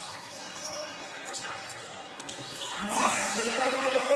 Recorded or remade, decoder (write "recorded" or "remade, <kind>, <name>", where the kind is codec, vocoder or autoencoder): remade, codec, SNAC